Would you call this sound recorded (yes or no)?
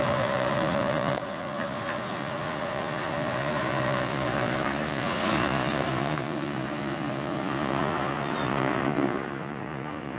no